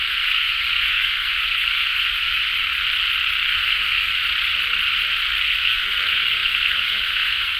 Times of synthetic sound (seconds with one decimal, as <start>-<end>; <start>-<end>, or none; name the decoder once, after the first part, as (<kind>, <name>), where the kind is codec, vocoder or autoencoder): 0.0-2.5 (codec, SNAC); 3.5-4.2; 5.4-7.6